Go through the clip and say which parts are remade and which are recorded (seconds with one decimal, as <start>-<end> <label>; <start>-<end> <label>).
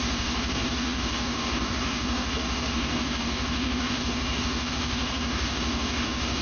0.0-6.4 remade